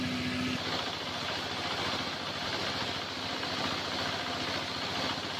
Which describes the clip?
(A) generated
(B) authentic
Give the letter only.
B